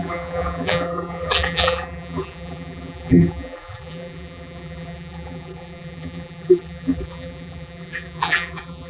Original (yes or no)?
no